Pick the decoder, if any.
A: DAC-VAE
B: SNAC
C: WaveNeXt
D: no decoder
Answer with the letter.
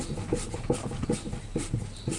D